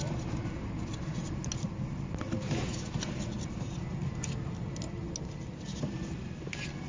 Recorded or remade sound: recorded